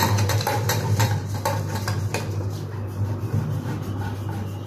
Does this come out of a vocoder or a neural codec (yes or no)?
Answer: no